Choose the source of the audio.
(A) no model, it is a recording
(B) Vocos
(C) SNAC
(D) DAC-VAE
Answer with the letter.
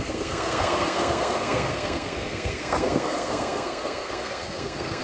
C